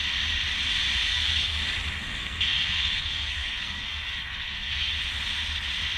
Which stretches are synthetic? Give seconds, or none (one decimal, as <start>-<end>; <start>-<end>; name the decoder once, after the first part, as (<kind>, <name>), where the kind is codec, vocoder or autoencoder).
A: 1.0-1.6 (codec, SNAC); 2.0-4.9